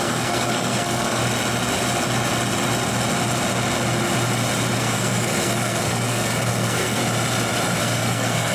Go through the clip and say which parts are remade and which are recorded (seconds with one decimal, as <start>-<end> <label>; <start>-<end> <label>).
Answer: 0.0-1.2 remade; 1.2-4.8 recorded; 4.8-7.0 remade; 7.0-7.8 recorded; 7.8-8.5 remade